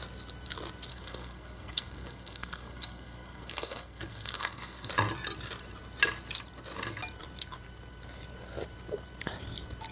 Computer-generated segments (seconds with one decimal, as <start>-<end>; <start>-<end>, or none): 0.9-4.9